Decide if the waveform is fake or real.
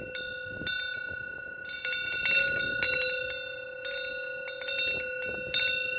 real